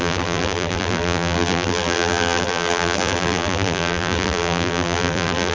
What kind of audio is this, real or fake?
fake